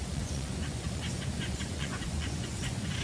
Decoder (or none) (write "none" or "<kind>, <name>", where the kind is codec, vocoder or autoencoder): vocoder, Vocos